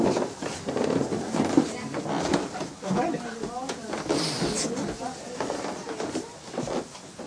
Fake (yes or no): no